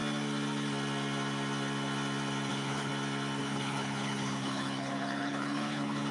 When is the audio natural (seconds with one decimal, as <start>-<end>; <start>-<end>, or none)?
0.0-2.5; 2.9-3.4